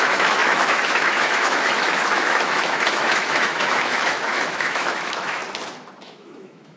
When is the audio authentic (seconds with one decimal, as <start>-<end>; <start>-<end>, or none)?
5.4-6.0